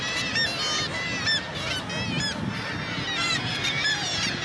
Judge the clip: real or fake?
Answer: real